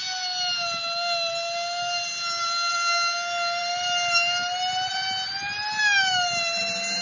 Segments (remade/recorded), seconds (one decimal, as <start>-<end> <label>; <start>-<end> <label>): 0.0-7.0 recorded